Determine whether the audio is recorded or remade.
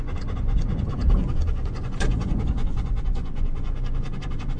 remade